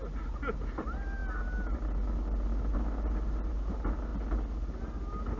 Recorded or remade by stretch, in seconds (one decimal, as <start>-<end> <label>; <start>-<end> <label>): 0.0-5.4 recorded